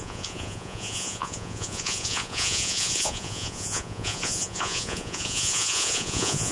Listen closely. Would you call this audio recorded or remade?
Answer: remade